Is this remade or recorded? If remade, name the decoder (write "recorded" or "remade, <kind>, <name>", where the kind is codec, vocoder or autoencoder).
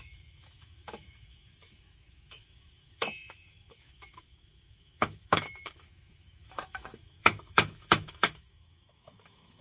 remade, autoencoder, DAC-VAE